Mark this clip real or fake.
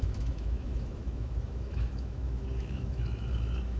fake